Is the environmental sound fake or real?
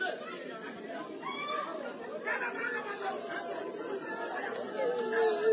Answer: real